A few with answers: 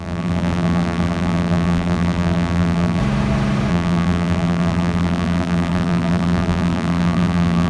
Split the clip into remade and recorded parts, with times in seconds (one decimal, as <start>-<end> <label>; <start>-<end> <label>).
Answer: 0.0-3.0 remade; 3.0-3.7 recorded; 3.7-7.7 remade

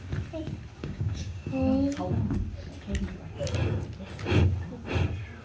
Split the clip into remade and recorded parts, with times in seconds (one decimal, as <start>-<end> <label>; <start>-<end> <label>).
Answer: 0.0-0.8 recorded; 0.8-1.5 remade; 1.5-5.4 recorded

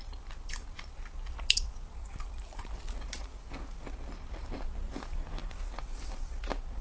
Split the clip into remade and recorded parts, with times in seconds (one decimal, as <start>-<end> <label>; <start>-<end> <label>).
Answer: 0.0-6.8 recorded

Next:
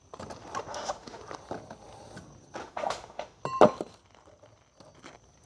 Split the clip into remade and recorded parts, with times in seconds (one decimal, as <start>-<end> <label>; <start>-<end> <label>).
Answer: 0.0-0.7 recorded; 0.7-1.2 remade; 1.2-2.6 recorded; 2.6-3.4 remade; 3.4-5.5 recorded

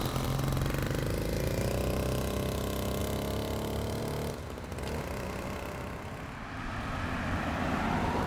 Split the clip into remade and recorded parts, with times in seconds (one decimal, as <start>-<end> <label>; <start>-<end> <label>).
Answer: 0.0-8.3 recorded